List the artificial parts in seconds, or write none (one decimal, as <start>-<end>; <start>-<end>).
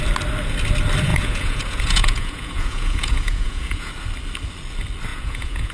1.1-3.9; 5.1-5.7